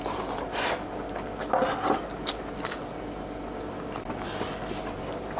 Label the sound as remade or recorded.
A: recorded